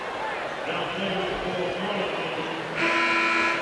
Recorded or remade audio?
recorded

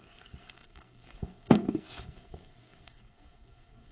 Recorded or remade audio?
remade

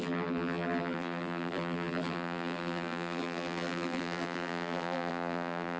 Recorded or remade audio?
remade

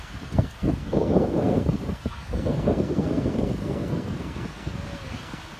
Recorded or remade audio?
remade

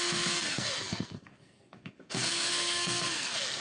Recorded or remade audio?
remade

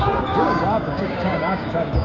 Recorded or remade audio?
remade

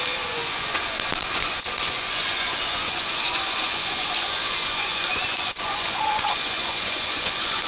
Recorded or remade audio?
remade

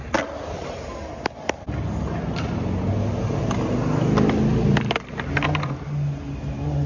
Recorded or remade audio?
recorded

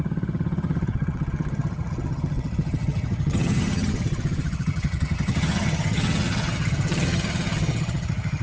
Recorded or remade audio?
remade